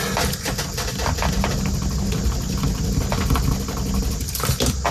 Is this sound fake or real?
real